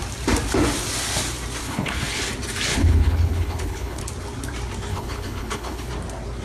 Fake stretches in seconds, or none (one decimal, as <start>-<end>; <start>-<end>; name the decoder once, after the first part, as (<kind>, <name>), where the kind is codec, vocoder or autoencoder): 1.6-2.3 (codec, HILCodec); 2.7-4.0; 4.9-5.9